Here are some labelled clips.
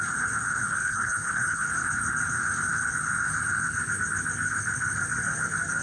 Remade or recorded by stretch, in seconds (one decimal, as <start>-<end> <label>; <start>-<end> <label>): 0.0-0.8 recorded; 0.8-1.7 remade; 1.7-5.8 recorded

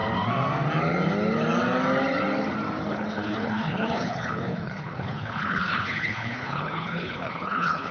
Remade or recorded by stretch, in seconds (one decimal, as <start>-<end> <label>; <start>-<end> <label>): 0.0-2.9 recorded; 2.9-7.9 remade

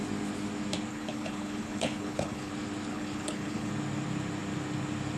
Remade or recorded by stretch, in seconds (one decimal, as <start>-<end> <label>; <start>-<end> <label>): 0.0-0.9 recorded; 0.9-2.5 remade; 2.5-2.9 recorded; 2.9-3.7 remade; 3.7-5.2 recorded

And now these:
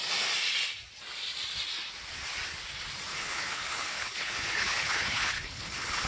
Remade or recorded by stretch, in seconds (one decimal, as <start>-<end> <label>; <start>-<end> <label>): 0.0-3.1 recorded; 3.1-6.1 remade